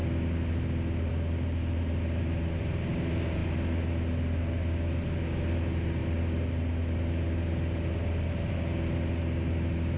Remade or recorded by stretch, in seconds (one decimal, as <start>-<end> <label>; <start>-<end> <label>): 0.0-10.0 recorded